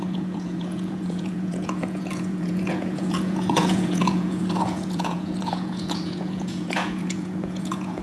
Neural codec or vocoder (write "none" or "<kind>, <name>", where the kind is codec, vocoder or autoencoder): vocoder, Vocos